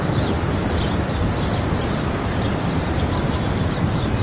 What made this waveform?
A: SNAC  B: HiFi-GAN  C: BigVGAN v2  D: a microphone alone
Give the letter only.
C